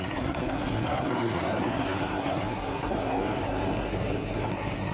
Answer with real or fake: fake